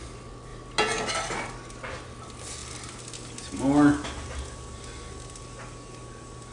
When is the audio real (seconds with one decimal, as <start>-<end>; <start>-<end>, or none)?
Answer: 0.0-6.5